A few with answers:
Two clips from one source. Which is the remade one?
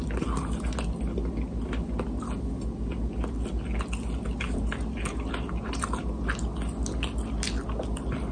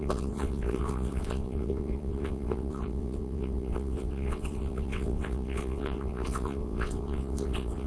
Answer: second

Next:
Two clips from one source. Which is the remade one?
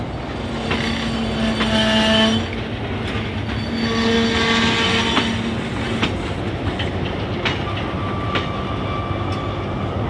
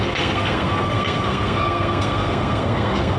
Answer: second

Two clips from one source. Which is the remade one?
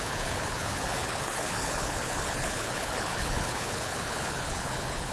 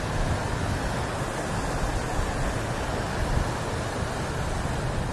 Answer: first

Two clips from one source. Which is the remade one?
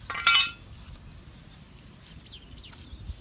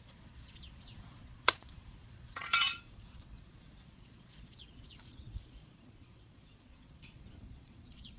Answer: second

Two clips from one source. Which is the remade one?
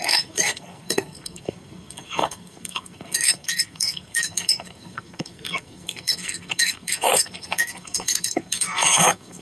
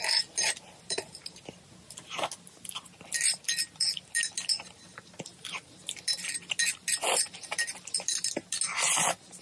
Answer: first